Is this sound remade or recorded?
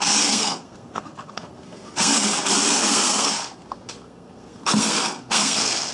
remade